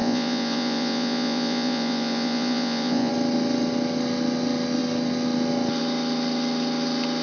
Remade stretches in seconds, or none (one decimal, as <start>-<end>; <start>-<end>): 0.0-3.1